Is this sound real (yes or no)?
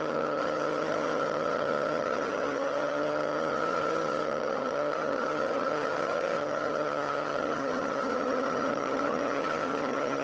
no